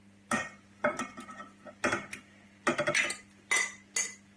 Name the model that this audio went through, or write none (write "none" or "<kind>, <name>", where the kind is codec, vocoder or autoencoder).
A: none